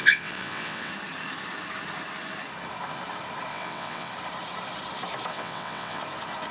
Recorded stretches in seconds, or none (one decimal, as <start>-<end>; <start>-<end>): 0.9-3.5; 4.1-5.3; 6.0-6.5

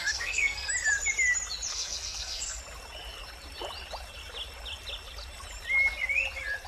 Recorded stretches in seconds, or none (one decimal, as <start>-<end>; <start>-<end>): 0.7-1.7; 2.6-6.7

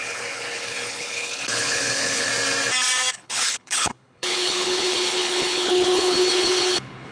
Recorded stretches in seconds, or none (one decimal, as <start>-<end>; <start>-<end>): 2.3-3.1

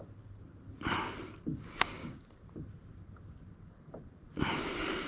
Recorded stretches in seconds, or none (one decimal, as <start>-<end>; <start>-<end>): 0.0-1.5; 2.2-5.1

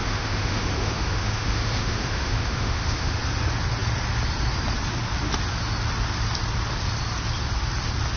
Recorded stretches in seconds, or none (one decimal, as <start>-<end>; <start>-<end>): 3.2-8.2

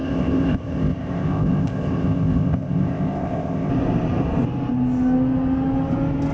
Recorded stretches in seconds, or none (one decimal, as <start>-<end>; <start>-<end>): 3.7-6.3

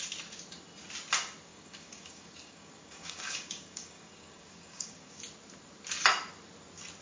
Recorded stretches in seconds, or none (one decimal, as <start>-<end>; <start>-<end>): 0.0-1.5; 5.2-7.0

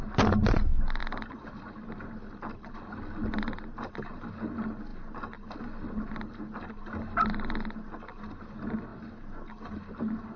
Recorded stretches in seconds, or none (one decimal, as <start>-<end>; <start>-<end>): 0.0-10.4